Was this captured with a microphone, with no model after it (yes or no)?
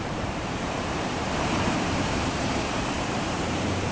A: no